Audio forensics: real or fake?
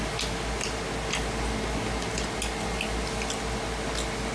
real